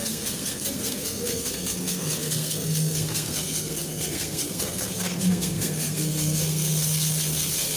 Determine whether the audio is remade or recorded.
remade